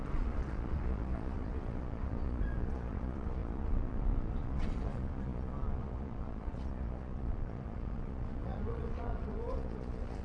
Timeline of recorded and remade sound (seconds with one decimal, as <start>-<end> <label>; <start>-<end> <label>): 0.0-10.2 remade